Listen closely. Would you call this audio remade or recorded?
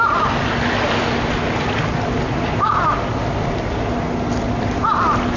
recorded